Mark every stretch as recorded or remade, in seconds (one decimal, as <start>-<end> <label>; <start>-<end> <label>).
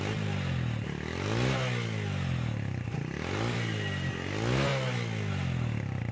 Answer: 0.0-6.1 recorded